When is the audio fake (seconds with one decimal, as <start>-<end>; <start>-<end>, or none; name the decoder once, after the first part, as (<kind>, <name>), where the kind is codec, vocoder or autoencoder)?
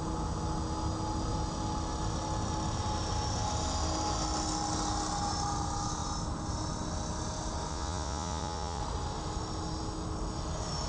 7.7-8.8 (vocoder, Vocos)